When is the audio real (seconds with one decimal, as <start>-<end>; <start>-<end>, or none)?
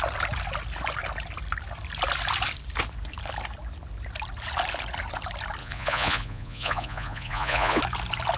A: 0.0-5.6; 7.8-8.4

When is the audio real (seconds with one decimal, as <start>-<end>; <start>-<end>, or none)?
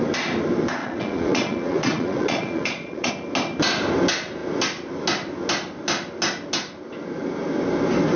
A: 0.0-0.8; 3.1-8.2